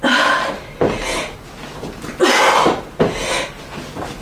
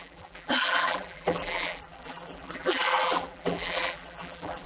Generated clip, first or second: second